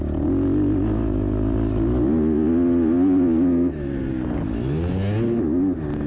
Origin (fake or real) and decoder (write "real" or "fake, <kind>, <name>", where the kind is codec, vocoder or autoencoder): real